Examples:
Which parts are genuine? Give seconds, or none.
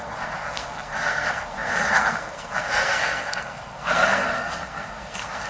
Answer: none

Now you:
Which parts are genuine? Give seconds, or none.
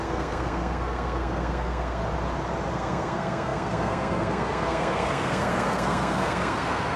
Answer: 2.0-2.7